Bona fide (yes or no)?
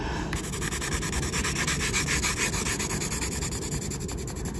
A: yes